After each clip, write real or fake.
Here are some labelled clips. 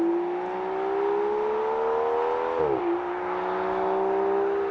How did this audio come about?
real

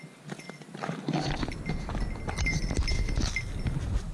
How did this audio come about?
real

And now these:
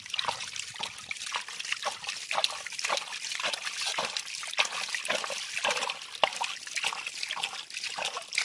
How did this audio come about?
real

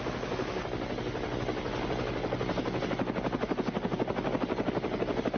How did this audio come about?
real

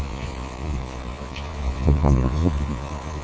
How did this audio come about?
fake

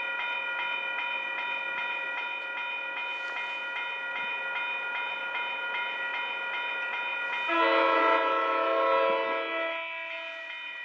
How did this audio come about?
real